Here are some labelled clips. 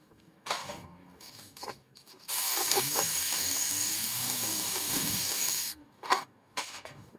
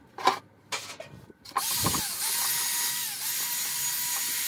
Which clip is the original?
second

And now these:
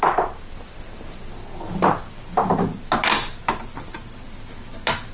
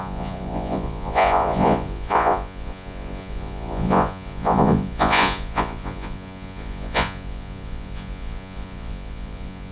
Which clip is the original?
first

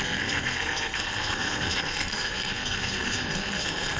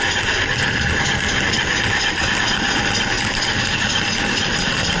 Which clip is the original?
second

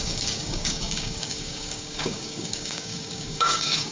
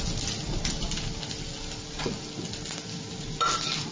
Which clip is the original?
second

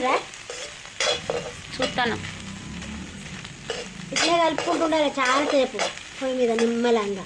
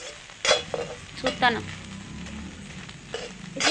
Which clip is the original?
second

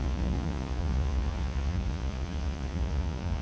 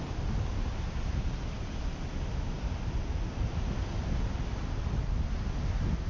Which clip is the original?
second